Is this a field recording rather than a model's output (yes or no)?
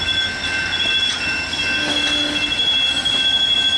yes